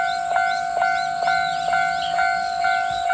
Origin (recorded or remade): recorded